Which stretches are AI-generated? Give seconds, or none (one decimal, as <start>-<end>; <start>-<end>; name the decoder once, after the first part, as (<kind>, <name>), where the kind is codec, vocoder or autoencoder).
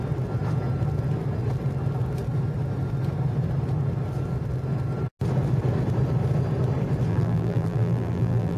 7.1-8.6 (vocoder, BigVGAN v2)